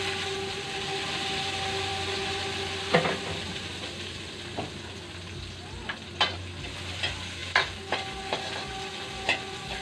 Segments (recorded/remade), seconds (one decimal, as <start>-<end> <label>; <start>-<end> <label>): 0.0-9.8 recorded